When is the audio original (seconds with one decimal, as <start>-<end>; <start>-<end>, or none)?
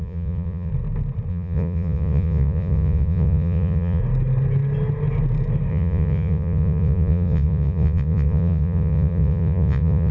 0.7-1.3; 4.0-5.7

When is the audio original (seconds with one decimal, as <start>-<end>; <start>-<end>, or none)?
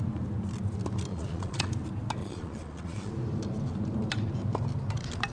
0.0-1.1; 1.7-2.2; 3.1-5.3